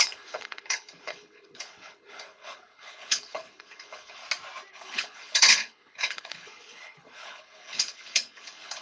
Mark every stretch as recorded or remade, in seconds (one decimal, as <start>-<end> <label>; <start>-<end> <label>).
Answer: 0.0-4.2 remade; 4.2-4.7 recorded; 4.7-8.8 remade